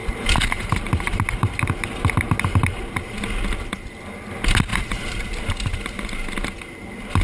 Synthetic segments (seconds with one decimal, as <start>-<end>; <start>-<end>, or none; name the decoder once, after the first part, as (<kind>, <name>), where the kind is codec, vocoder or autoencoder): 0.0-3.1 (vocoder, BigVGAN v2); 4.7-5.5

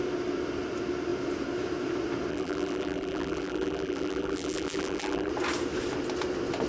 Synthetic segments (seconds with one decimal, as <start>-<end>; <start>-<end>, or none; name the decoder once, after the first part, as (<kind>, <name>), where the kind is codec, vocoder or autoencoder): 2.3-5.3 (vocoder, BigVGAN v2)